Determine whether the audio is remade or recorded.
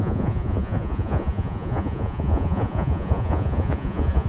remade